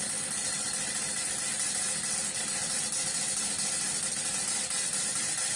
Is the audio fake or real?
real